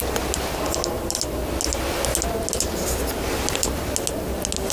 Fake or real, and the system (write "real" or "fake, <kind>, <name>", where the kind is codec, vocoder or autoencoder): real